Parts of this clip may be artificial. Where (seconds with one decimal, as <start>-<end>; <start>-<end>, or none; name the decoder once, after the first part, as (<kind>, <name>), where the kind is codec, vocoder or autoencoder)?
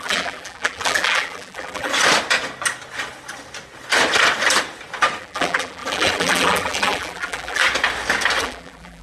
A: 0.0-1.9 (vocoder, BigVGAN v2); 5.2-7.6; 8.4-9.0